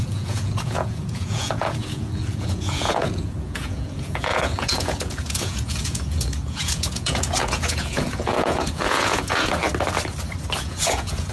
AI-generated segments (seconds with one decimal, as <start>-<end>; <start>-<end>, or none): 0.0-9.6; 10.6-11.3